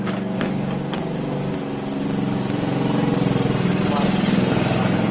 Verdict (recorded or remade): recorded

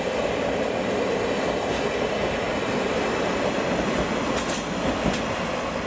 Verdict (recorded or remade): recorded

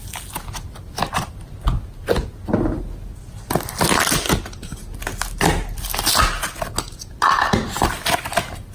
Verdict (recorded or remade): recorded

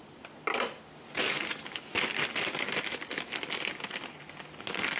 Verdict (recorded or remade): recorded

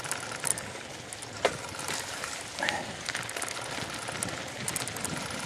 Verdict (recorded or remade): recorded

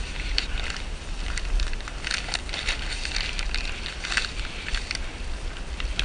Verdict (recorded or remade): recorded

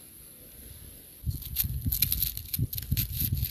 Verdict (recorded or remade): recorded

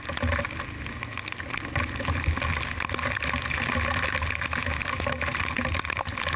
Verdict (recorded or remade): recorded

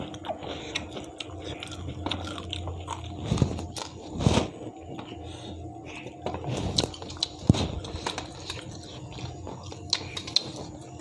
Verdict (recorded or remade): recorded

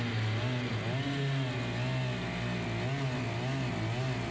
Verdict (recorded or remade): recorded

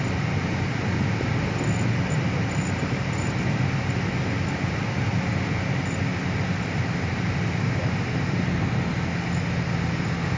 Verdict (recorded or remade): recorded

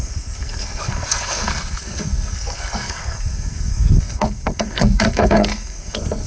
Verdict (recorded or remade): remade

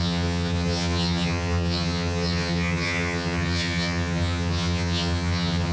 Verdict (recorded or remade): remade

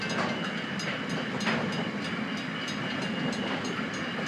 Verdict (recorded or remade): recorded